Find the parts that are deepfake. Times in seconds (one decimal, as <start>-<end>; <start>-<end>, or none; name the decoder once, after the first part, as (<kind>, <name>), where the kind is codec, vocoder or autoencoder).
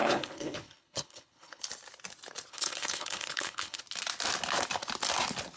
0.0-1.6 (codec, HILCodec); 2.5-3.8